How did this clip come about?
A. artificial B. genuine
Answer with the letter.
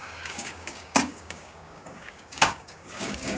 A